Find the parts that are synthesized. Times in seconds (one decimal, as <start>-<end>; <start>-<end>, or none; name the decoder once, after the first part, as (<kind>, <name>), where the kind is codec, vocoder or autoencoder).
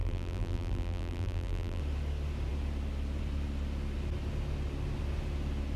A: 0.0-1.8 (vocoder, BigVGAN v2)